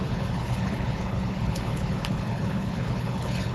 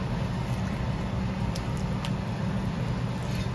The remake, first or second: first